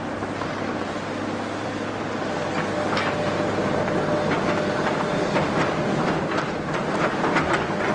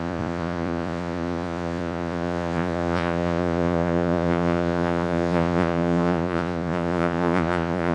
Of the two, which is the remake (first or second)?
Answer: second